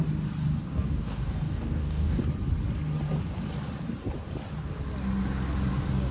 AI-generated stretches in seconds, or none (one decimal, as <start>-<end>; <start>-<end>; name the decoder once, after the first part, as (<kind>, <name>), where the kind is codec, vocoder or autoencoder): 0.6-2.2 (codec, DAC)